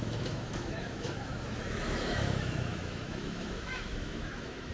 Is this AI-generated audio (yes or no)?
yes